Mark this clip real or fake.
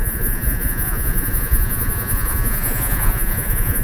fake